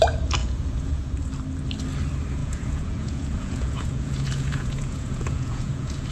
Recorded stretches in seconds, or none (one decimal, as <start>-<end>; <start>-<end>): 0.0-0.4; 1.2-2.4